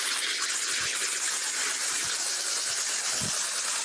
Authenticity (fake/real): real